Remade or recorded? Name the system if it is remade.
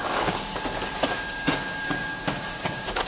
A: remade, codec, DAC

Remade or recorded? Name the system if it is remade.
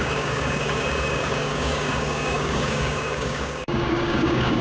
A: remade, codec, DAC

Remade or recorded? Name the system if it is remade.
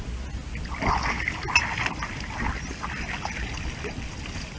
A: recorded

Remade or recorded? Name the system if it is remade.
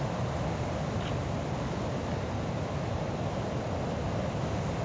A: recorded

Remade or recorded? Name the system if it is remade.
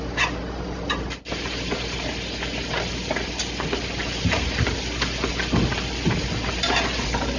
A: recorded